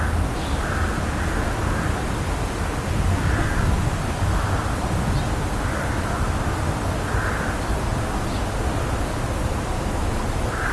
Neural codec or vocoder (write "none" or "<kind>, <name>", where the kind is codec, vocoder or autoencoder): none